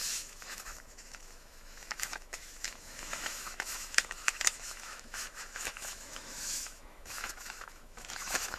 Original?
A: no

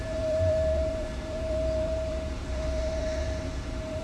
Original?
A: no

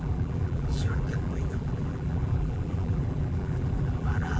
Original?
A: no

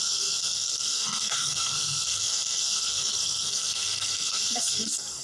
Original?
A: no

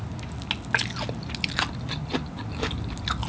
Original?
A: yes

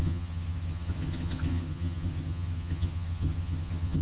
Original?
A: no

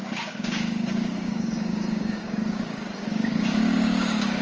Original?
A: no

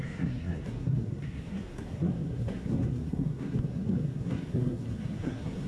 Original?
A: no